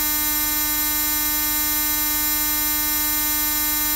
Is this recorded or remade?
recorded